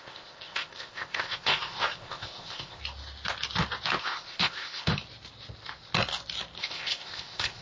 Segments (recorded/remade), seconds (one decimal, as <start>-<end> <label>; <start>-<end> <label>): 0.0-2.8 remade; 2.8-4.0 recorded; 4.0-4.9 remade; 4.9-6.6 recorded; 6.6-7.6 remade